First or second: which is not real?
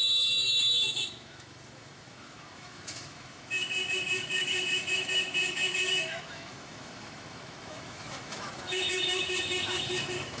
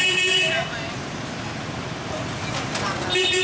first